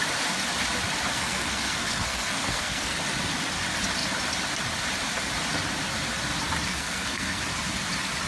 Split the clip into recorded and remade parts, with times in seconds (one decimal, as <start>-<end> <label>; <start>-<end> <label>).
0.0-1.1 recorded; 1.1-3.0 remade; 3.0-6.7 recorded; 6.7-7.4 remade; 7.4-8.3 recorded